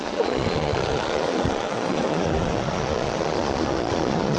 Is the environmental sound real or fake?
fake